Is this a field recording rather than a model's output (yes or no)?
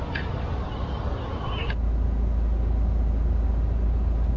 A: yes